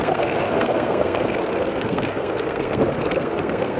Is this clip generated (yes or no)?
yes